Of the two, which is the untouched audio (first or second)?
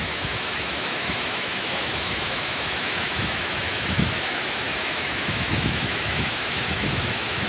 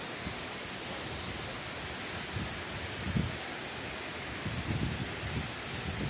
second